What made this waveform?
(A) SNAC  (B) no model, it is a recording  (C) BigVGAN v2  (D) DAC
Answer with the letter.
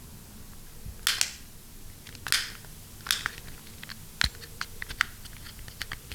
B